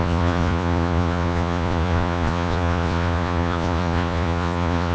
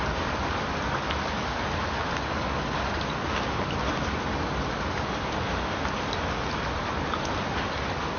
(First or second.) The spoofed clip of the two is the first